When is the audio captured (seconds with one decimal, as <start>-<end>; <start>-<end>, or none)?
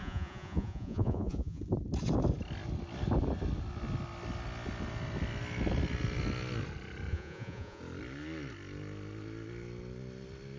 1.6-7.1; 7.8-10.6